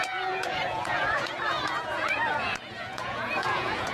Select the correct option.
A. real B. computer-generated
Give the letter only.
B